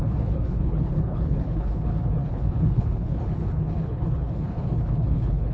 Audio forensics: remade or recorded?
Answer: remade